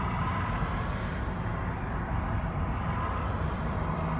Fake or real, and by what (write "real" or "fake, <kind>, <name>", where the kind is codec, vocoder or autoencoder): fake, vocoder, BigVGAN v2